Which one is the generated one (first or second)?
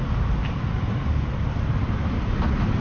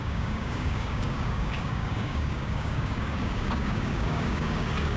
second